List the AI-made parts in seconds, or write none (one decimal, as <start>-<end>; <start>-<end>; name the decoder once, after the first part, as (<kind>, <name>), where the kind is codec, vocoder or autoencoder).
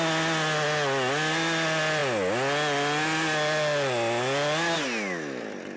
none